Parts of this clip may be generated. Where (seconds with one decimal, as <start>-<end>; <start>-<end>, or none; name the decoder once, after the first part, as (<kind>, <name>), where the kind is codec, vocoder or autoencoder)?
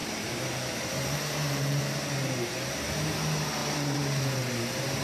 0.0-1.8 (vocoder, BigVGAN v2); 3.6-4.2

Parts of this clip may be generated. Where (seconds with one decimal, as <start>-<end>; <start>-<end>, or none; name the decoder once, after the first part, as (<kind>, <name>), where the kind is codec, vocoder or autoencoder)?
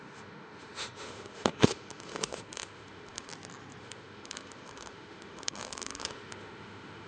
0.0-3.3 (autoencoder, DAC-VAE); 3.8-7.1